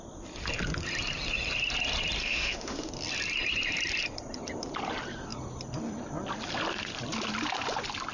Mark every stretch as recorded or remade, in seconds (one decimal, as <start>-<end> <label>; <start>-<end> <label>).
0.0-2.2 recorded; 2.2-2.9 remade; 2.9-8.1 recorded